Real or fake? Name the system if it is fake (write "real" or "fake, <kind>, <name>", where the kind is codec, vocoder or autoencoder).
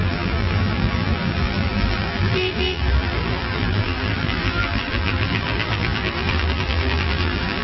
fake, vocoder, BigVGAN v2